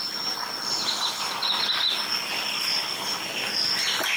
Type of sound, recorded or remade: recorded